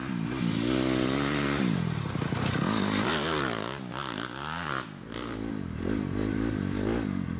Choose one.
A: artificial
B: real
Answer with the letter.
B